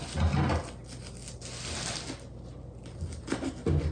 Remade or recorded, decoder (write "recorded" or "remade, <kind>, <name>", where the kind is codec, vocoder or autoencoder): recorded